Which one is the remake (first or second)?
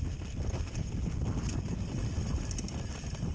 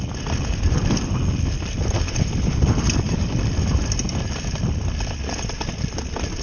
first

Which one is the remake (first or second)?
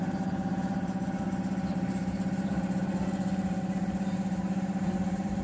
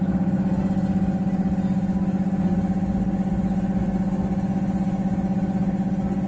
first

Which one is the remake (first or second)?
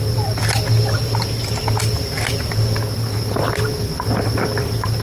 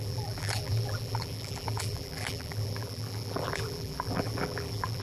second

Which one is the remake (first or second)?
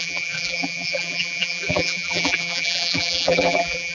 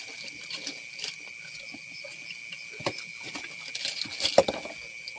first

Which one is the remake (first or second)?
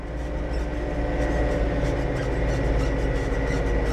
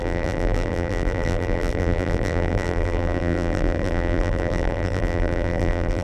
second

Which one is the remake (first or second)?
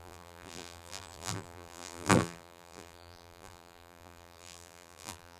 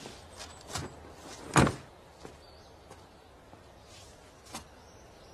first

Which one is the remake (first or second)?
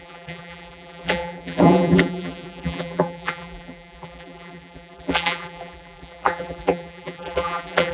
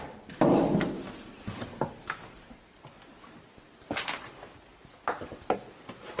first